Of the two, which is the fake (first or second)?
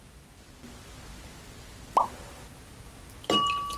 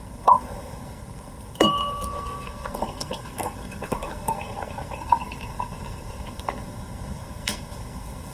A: second